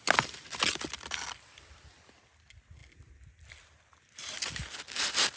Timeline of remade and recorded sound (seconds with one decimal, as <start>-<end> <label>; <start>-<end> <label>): 0.0-5.4 recorded